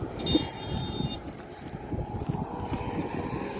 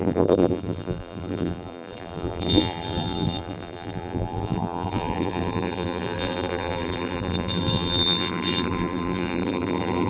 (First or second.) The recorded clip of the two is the first